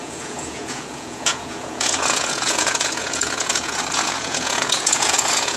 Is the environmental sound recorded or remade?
remade